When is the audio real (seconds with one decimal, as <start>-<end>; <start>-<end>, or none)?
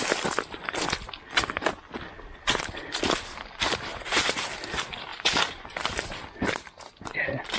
0.0-3.9; 4.5-5.1; 5.8-7.6